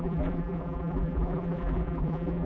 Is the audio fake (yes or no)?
yes